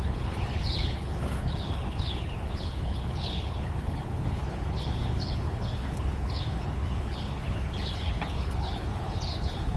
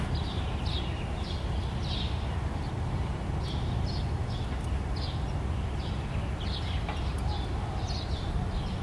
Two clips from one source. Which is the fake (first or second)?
first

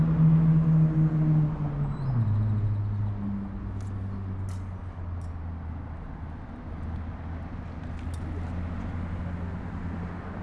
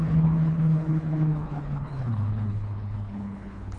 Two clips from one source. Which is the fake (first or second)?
second